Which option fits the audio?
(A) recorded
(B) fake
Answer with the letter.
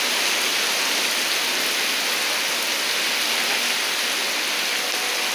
A